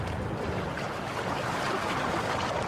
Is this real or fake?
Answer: real